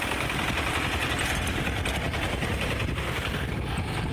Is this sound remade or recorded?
recorded